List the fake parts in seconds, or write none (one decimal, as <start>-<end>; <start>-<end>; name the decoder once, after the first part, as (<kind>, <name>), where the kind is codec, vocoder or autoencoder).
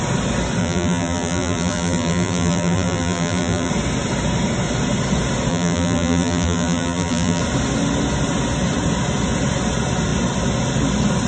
0.6-3.7 (vocoder, BigVGAN v2); 5.5-7.4